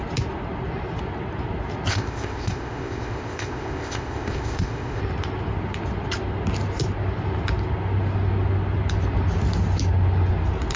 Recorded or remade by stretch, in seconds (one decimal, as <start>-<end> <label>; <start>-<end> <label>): 0.0-1.9 recorded; 1.9-5.0 remade; 5.0-10.8 recorded

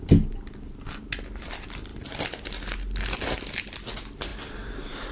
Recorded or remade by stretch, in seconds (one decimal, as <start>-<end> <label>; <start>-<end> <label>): 0.0-5.1 recorded

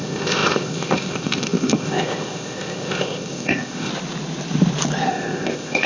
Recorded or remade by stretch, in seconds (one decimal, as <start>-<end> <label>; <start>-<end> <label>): 0.0-3.9 remade; 3.9-5.1 recorded; 5.1-5.9 remade

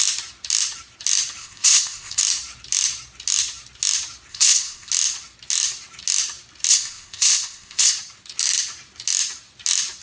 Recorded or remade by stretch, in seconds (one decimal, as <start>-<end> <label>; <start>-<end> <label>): 0.0-1.4 recorded; 1.4-2.2 remade; 2.2-4.3 recorded; 4.3-4.9 remade; 4.9-6.7 recorded; 6.7-7.9 remade; 7.9-10.0 recorded

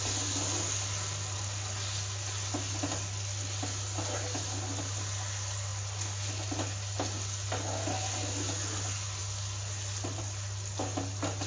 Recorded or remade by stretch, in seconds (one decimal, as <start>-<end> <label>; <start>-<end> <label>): 0.0-11.5 recorded

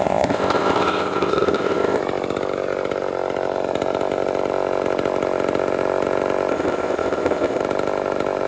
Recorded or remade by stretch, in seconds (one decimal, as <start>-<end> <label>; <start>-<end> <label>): 0.0-2.0 remade; 2.0-6.5 recorded; 6.5-7.6 remade; 7.6-8.5 recorded

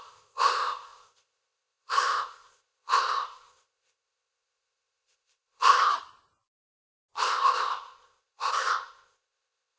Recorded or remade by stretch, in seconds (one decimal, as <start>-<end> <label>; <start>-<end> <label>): 0.0-5.9 remade; 5.9-7.2 recorded; 7.2-9.8 remade

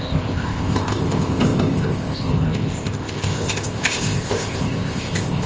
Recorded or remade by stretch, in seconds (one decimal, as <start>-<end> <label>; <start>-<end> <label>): 0.0-5.5 remade